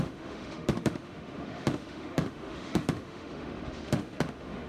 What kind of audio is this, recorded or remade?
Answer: remade